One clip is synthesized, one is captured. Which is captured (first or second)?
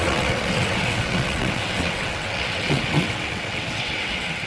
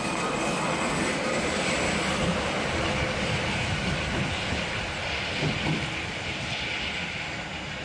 second